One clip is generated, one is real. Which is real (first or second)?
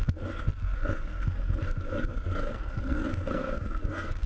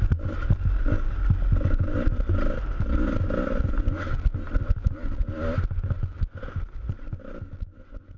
second